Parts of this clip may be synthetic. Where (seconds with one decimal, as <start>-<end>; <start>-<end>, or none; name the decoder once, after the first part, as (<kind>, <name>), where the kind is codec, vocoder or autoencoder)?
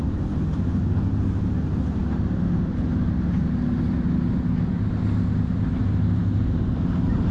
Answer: none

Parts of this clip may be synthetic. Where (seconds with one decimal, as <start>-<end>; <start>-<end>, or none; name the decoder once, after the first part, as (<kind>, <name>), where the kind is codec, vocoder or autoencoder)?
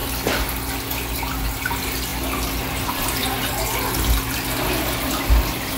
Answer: none